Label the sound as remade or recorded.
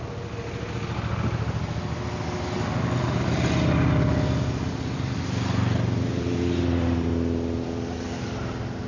recorded